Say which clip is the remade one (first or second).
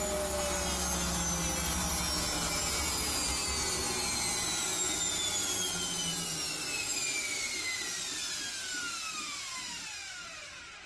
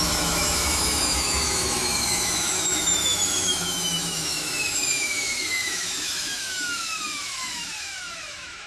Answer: second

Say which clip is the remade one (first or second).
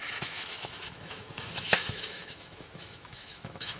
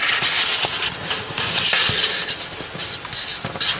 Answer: first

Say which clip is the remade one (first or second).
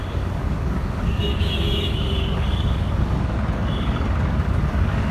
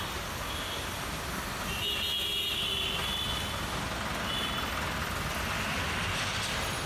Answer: first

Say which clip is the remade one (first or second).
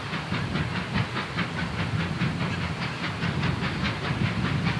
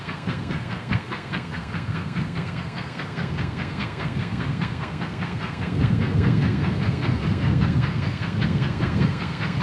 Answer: second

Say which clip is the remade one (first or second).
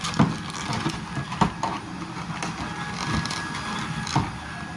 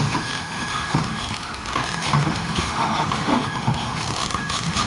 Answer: second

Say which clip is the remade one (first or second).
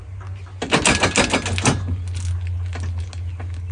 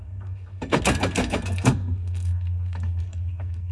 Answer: second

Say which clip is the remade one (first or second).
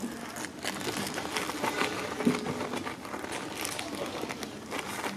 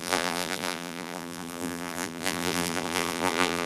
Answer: second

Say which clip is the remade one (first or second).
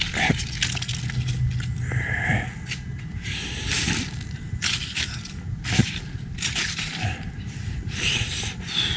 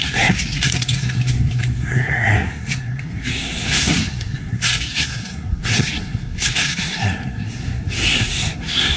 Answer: second